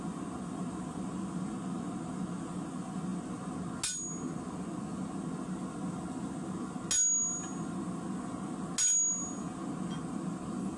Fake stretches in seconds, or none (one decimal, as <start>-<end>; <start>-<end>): none